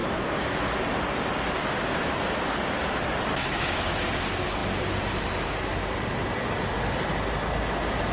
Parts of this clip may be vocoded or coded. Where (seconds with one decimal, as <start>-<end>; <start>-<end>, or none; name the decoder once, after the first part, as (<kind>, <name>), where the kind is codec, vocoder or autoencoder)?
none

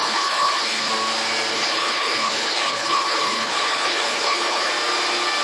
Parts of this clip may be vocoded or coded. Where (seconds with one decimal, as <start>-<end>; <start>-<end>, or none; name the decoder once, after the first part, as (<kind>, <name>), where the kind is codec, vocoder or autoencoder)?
0.0-0.9 (codec, HILCodec); 1.5-4.7

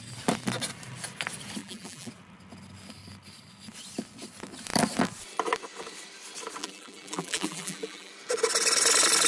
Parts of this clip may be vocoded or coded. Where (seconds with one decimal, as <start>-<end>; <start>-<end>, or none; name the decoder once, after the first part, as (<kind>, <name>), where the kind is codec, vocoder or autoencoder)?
1.6-2.1 (vocoder, BigVGAN v2); 6.6-8.1

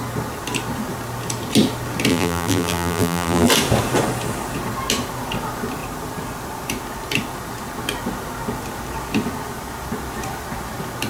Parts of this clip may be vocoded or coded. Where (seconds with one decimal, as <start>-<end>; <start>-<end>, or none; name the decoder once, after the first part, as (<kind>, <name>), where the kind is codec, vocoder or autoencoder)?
2.1-3.5 (vocoder, BigVGAN v2)

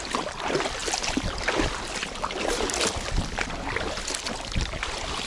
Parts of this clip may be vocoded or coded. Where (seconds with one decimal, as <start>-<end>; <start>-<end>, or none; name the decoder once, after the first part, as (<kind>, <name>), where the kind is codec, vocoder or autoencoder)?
none

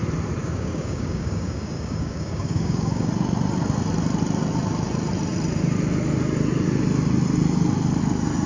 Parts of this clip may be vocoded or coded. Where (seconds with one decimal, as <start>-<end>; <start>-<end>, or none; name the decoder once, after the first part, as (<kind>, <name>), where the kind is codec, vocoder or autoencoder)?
0.4-3.1 (codec, DAC)

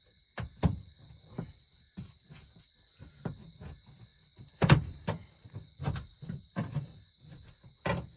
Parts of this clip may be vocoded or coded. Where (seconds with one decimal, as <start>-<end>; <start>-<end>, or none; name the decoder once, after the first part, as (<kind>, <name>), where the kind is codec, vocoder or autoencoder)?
4.1-7.1 (vocoder, BigVGAN v2)